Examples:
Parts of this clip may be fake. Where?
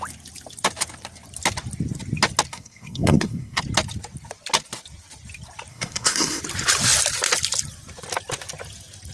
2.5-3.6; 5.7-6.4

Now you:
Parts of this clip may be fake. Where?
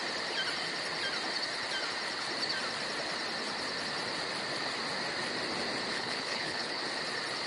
5.9-6.8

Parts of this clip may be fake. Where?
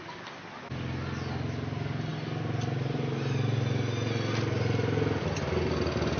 none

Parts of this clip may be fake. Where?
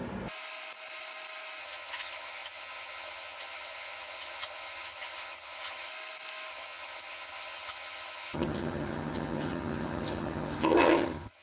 1.6-5.9; 6.5-11.4